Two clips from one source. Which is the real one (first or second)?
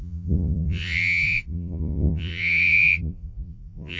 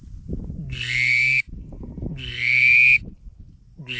second